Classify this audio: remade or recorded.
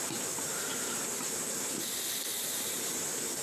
recorded